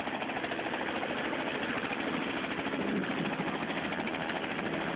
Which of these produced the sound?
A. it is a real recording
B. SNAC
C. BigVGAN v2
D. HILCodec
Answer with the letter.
A